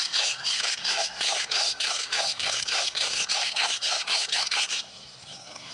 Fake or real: fake